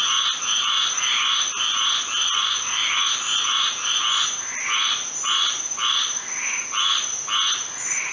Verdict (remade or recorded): recorded